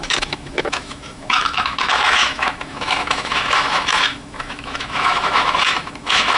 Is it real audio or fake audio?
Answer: fake